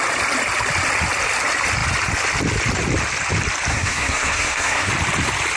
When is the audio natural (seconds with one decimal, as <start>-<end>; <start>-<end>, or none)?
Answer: 0.0-3.7; 4.9-5.6